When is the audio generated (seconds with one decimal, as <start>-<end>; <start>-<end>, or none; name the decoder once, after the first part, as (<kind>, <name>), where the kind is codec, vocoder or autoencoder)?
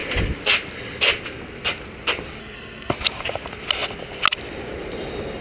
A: 2.4-2.9 (codec, SNAC)